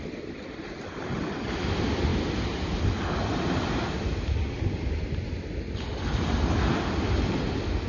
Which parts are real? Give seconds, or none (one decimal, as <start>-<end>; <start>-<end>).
0.0-7.9